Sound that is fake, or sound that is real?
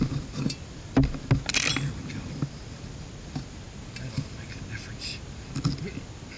real